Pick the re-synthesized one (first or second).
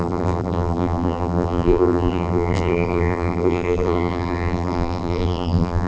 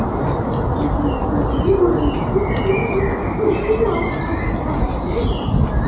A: first